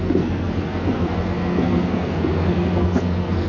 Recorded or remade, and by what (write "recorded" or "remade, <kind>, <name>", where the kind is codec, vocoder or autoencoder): remade, codec, SNAC